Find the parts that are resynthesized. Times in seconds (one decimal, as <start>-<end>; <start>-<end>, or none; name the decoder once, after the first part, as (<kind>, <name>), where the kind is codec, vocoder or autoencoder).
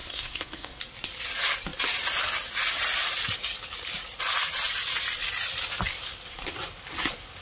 0.0-0.8 (codec, SNAC)